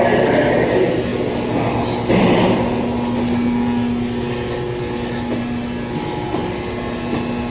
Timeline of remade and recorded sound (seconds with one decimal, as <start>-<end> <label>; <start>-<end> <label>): 0.0-7.5 recorded